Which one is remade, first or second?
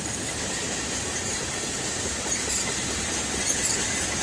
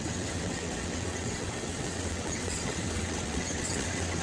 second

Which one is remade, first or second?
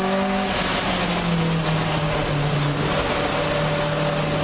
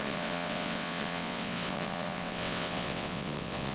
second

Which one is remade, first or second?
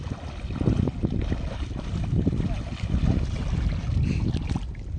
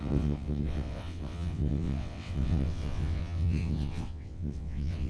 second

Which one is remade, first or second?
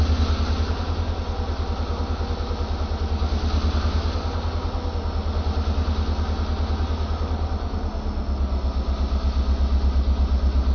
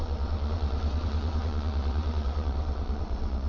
second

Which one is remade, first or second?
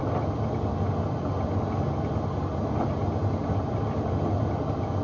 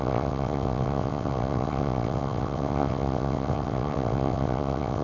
second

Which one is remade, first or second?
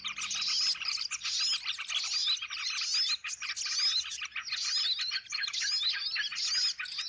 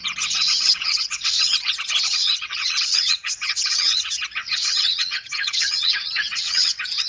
second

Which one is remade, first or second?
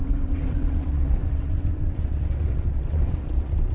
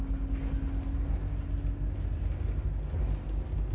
first